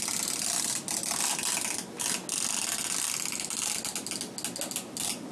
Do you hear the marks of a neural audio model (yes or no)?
no